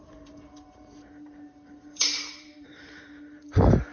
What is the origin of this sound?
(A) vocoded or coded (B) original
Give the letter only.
A